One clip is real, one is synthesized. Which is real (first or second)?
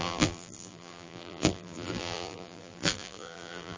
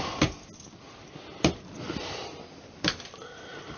second